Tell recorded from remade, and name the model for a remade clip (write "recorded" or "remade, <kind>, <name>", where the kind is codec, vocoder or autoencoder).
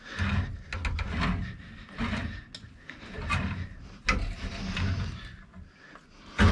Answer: recorded